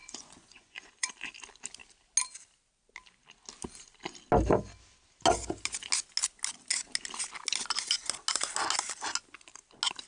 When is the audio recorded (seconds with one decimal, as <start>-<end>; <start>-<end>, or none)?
1.1-10.1